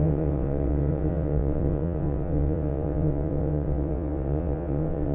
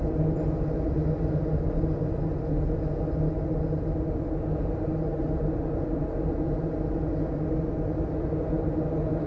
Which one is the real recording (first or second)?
second